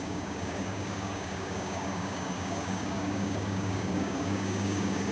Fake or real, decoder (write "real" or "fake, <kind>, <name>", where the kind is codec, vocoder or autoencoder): fake, codec, DAC